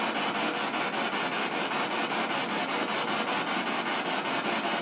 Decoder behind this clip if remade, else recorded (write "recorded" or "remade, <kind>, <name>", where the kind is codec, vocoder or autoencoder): recorded